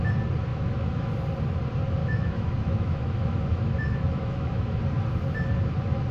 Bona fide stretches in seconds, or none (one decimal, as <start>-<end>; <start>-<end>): 0.0-0.5; 1.1-2.0; 4.8-6.1